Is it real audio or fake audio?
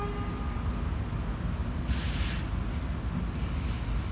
real